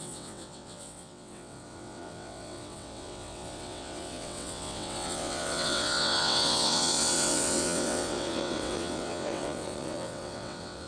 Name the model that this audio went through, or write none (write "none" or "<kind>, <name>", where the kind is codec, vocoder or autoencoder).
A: vocoder, WaveNeXt